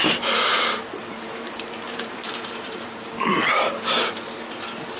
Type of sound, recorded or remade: remade